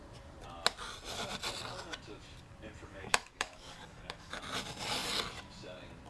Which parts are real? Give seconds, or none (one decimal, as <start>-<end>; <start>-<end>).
0.0-2.9; 4.4-6.1